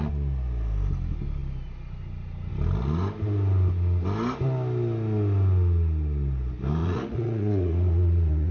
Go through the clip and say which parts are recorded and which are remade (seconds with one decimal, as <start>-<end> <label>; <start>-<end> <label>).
0.0-6.8 recorded; 6.8-8.5 remade